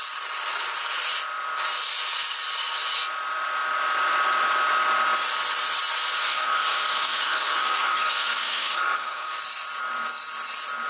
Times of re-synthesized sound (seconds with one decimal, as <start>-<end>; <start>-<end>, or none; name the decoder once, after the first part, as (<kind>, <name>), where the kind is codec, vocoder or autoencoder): 6.2-9.4 (codec, SNAC)